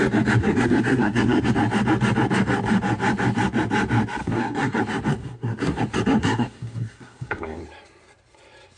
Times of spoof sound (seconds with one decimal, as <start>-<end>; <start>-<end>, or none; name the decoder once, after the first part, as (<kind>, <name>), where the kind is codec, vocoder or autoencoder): 0.4-1.5 (codec, SNAC); 4.2-4.8; 5.2-5.8; 6.2-7.6